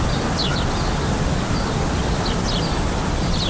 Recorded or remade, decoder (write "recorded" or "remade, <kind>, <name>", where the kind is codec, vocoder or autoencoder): recorded